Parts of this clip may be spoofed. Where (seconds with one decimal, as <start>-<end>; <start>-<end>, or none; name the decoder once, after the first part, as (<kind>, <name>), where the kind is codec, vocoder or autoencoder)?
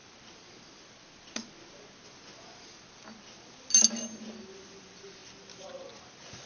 none